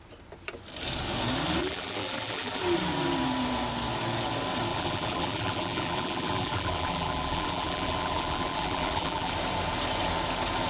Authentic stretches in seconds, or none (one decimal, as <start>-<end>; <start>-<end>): 0.0-1.6; 2.6-4.7; 9.3-10.7